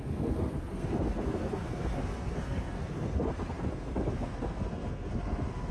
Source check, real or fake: fake